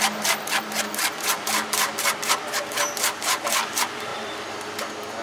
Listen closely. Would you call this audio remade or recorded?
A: recorded